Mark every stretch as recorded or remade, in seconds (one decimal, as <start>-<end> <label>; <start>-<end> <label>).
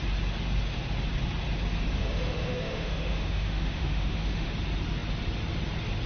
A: 0.0-2.0 recorded; 2.0-4.5 remade; 4.5-6.1 recorded